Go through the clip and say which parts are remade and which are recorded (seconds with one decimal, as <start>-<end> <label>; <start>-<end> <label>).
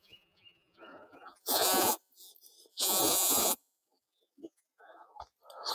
0.0-2.3 remade; 2.3-2.7 recorded; 2.7-5.2 remade; 5.2-5.7 recorded